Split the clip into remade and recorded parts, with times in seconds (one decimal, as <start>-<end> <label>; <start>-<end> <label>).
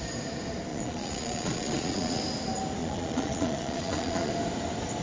0.0-0.7 recorded; 0.7-2.2 remade; 2.2-2.8 recorded; 2.8-4.3 remade; 4.3-5.0 recorded